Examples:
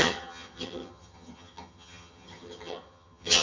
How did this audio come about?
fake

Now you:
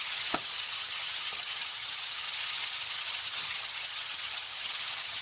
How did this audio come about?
fake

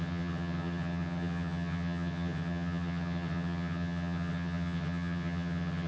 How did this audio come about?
fake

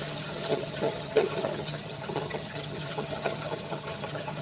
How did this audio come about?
fake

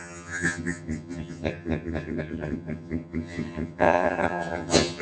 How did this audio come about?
fake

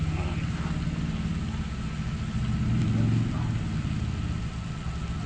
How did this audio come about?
real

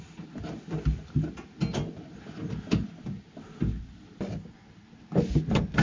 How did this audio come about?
real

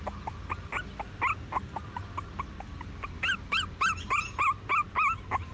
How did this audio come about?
real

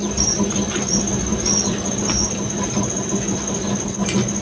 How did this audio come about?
real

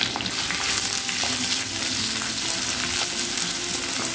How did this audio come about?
real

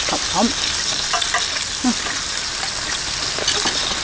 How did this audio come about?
real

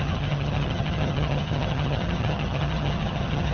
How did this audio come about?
fake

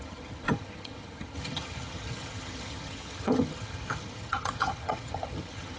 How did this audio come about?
fake